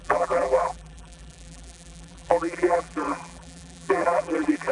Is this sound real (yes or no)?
no